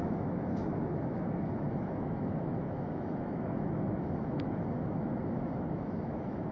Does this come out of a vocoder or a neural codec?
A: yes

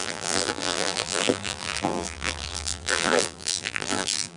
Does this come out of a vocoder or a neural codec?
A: yes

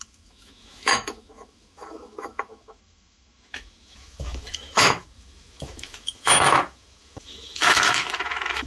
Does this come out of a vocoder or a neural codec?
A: yes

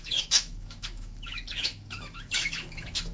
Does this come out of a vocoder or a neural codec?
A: yes